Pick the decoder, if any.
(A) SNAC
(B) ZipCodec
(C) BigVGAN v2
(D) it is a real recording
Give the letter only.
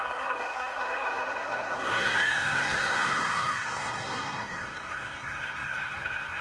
A